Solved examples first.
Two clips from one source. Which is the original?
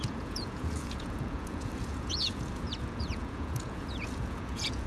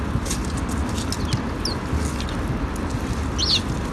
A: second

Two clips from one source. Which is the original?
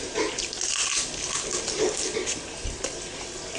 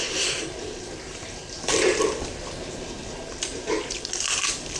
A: first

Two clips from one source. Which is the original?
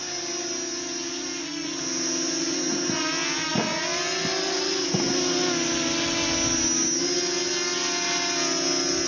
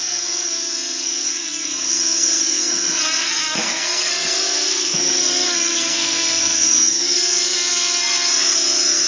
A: first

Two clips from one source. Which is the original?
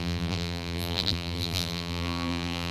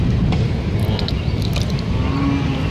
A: second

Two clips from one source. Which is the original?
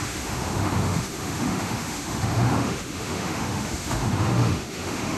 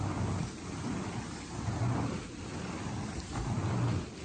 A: second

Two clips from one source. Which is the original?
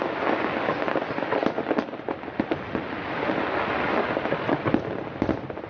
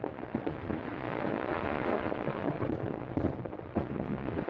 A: first